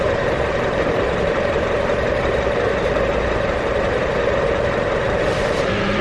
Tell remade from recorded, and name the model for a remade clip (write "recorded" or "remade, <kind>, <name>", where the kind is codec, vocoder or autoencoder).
remade, vocoder, BigVGAN v2